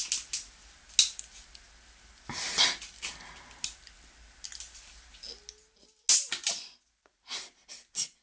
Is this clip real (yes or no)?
yes